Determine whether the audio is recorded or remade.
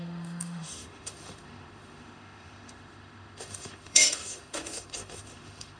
remade